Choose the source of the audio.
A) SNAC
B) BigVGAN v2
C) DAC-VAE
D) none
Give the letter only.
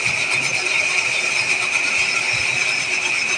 D